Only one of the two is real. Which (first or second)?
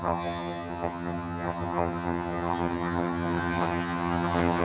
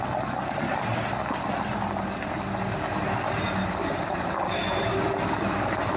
second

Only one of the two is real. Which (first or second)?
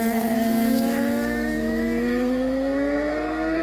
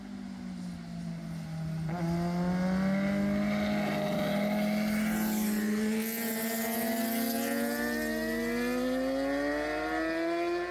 second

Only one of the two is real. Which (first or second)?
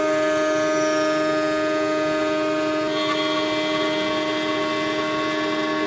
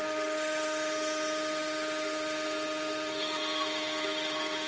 first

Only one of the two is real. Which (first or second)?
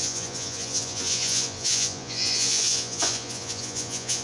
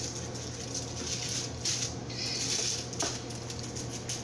second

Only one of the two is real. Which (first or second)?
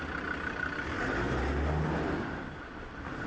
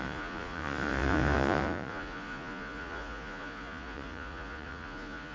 first